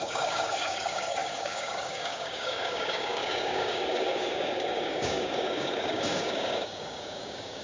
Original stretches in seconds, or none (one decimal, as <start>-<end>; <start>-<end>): none